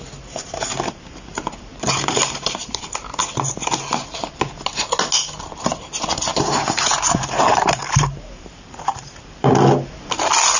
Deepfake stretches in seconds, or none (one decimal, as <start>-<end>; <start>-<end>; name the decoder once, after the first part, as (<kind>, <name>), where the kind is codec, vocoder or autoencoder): 1.7-3.2 (vocoder, BigVGAN v2); 6.3-9.5